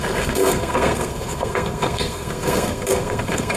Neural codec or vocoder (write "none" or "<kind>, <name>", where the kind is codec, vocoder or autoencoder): codec, SNAC